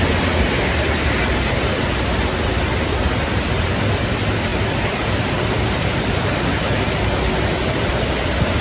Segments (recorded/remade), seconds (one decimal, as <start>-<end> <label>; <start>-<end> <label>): 0.0-4.5 recorded; 4.5-7.1 remade; 7.1-8.6 recorded